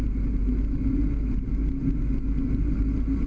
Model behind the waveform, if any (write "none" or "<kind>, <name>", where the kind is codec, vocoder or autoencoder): none